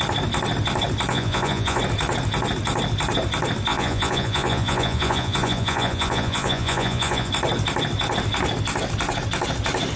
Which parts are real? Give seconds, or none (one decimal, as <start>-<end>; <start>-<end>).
0.0-1.1; 1.8-3.7; 7.3-10.0